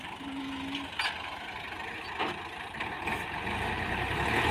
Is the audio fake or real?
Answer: real